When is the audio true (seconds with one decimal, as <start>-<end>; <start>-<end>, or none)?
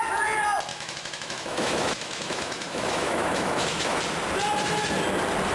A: 0.0-0.7; 4.0-5.5